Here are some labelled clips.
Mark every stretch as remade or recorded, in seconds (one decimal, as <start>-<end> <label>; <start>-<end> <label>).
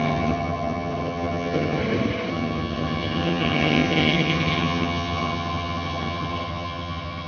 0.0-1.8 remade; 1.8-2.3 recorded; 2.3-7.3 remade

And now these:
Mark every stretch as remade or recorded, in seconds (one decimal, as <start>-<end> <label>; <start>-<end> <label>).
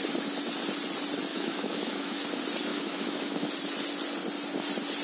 0.0-1.3 recorded; 1.3-2.2 remade; 2.2-2.7 recorded; 2.7-3.5 remade; 3.5-5.0 recorded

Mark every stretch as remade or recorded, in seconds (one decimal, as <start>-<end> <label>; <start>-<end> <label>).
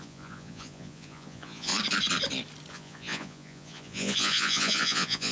0.0-1.7 remade; 1.7-2.7 recorded; 2.7-5.3 remade